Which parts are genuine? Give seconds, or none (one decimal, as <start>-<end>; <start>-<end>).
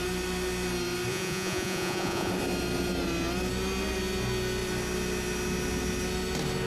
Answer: 0.0-1.1; 2.3-6.7